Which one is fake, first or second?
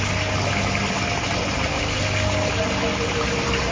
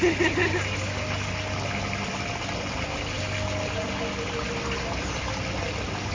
first